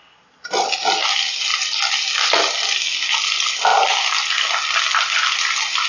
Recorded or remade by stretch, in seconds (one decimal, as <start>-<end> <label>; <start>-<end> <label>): 0.0-5.9 recorded